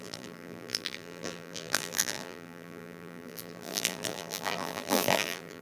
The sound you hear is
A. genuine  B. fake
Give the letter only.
B